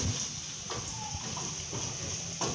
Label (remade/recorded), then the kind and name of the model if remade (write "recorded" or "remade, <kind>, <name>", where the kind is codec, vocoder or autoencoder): recorded